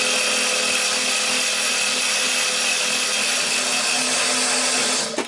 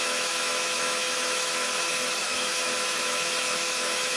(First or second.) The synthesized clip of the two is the second